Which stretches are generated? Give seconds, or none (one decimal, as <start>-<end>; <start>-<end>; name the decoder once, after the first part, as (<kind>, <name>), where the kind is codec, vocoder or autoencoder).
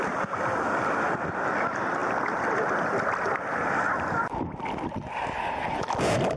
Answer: none